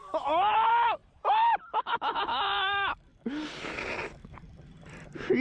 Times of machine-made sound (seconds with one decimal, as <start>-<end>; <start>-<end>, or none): 0.0-3.1; 4.7-5.4